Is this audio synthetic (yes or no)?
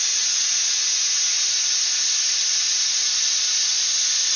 no